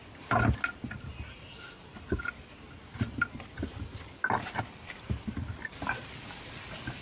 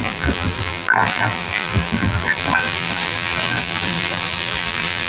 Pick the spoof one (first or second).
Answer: second